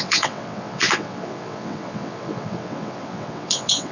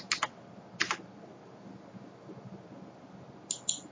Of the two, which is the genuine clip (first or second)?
second